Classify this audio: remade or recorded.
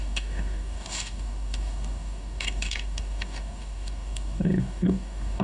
remade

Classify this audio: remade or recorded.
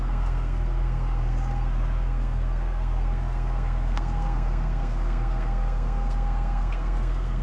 remade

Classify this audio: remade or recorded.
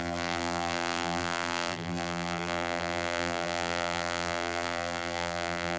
remade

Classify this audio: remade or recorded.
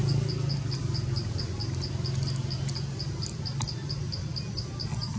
recorded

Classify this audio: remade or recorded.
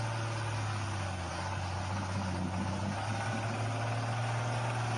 recorded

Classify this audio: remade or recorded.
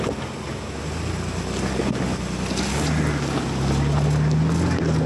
recorded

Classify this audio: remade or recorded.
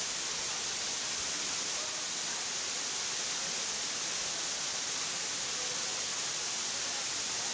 recorded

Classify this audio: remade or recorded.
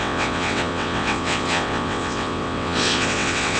remade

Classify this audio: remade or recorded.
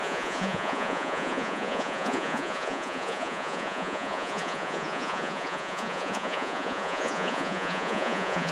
remade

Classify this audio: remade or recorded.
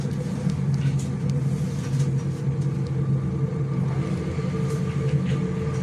recorded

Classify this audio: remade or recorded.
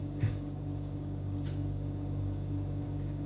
remade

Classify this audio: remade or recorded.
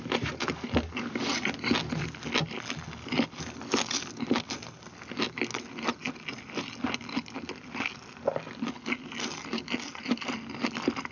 recorded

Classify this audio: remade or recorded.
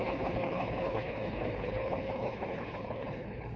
remade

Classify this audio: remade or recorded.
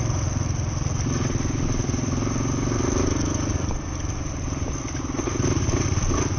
recorded